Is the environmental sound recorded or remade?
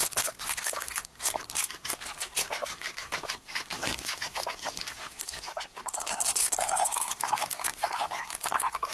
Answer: remade